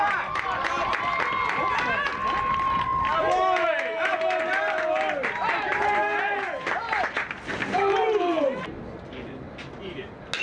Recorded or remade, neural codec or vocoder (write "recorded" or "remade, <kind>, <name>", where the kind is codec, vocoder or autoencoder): recorded